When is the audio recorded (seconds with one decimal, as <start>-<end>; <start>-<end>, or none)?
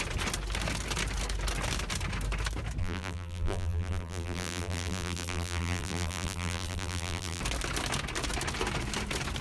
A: 0.0-2.8; 7.4-9.4